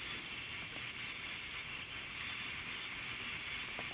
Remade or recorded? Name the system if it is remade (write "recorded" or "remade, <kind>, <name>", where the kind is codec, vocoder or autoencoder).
recorded